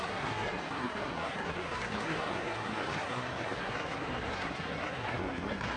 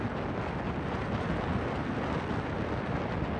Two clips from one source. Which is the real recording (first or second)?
second